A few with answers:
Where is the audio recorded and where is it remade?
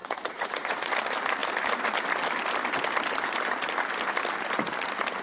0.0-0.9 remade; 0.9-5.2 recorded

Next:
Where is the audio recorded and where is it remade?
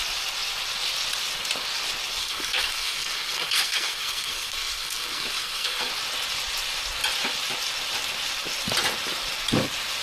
0.0-2.2 recorded; 2.2-5.9 remade; 5.9-10.0 recorded